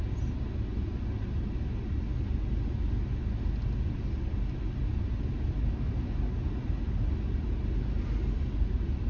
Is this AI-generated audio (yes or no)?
no